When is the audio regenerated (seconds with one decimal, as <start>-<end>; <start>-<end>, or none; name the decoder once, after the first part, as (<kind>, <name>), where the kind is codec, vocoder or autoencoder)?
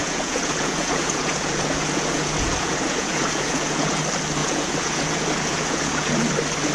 0.0-4.0 (vocoder, Vocos); 4.4-6.3